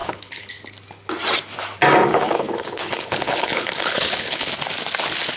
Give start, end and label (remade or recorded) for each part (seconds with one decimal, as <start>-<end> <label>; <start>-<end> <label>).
0.0-0.5 remade; 0.5-2.1 recorded; 2.1-4.5 remade; 4.5-5.4 recorded